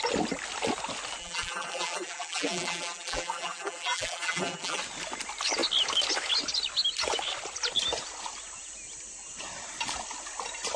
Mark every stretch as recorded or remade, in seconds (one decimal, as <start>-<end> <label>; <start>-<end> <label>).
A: 0.0-1.2 recorded; 1.2-4.8 remade; 4.8-10.8 recorded